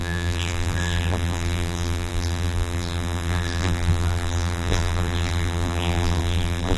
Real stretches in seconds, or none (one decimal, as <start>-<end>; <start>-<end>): none